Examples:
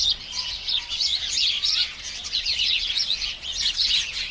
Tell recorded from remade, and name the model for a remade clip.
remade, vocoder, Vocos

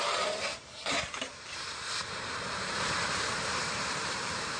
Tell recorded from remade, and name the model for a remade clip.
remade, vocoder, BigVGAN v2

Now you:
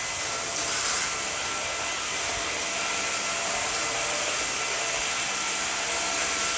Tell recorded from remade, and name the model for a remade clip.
recorded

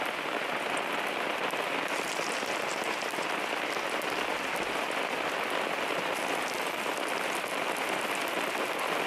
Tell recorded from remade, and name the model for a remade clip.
recorded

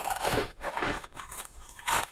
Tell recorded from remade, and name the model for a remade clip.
remade, autoencoder, DAC-VAE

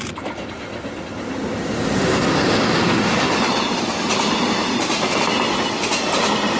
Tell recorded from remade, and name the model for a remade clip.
recorded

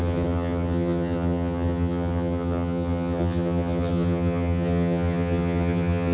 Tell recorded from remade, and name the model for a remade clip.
remade, vocoder, HiFi-GAN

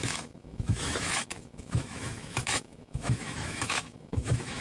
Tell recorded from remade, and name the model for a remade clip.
remade, autoencoder, DAC-VAE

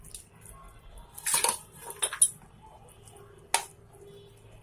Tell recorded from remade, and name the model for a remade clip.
recorded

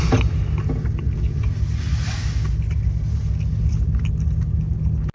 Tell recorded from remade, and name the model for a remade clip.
recorded